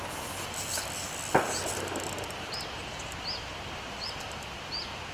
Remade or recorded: recorded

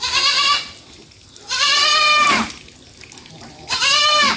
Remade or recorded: recorded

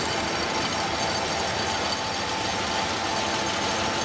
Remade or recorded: recorded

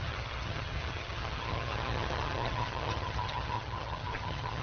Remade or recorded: remade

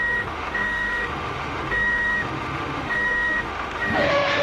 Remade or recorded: remade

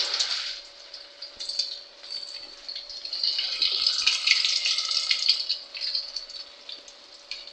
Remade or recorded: remade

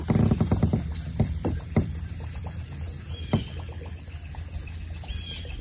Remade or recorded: recorded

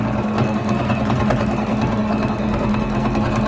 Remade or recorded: remade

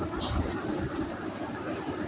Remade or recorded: remade